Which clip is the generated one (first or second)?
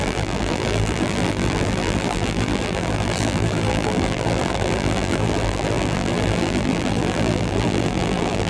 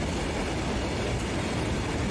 first